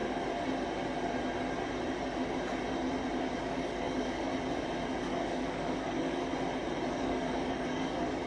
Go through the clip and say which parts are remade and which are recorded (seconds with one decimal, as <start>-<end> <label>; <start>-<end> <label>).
0.0-3.2 recorded; 3.2-4.3 remade; 4.3-5.0 recorded; 5.0-6.3 remade; 6.3-6.9 recorded; 6.9-8.3 remade